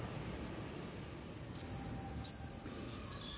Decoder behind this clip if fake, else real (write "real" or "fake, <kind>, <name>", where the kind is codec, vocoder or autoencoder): real